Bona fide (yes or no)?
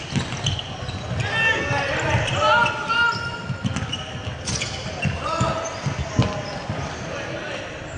yes